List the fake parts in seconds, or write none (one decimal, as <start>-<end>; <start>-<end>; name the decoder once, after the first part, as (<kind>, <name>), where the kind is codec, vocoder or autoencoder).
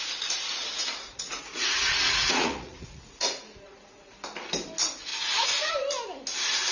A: 0.6-4.1 (vocoder, Vocos); 5.1-5.7